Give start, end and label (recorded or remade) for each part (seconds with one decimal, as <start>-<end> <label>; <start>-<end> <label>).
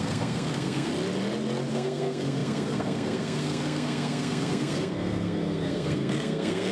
0.0-0.9 remade; 0.9-1.7 recorded; 1.7-6.7 remade